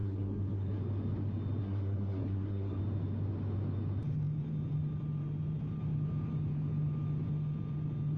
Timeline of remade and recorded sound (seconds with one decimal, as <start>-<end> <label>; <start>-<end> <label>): 0.0-0.8 remade; 0.8-1.6 recorded; 1.6-2.8 remade; 2.8-8.2 recorded